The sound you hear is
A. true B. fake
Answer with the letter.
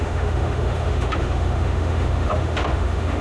B